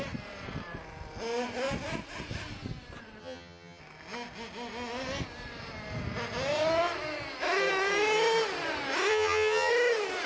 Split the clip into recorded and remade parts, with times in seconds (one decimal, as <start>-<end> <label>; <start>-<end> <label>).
0.0-3.2 recorded; 3.2-3.8 remade; 3.8-9.1 recorded; 9.1-9.7 remade; 9.7-10.3 recorded